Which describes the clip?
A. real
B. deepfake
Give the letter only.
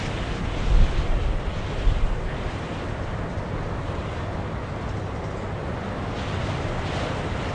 A